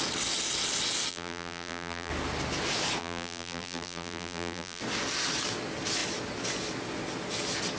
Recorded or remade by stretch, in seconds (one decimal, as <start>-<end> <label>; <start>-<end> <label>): 0.0-1.1 recorded; 1.1-2.1 remade; 2.1-3.0 recorded; 3.0-4.8 remade; 4.8-7.8 recorded